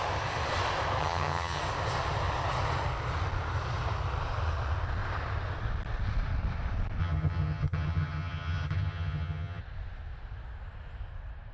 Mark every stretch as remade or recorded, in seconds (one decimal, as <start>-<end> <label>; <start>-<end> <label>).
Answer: 0.0-1.0 recorded; 1.0-1.6 remade; 1.6-7.0 recorded; 7.0-9.6 remade; 9.6-11.5 recorded